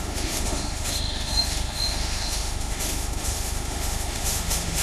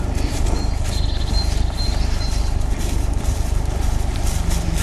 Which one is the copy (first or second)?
first